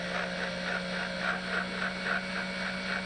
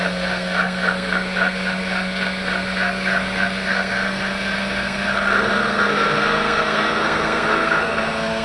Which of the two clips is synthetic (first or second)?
second